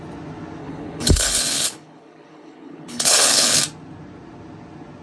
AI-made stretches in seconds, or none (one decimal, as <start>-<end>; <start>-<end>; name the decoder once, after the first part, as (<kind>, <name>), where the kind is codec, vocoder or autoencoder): 0.6-3.6 (codec, HILCodec)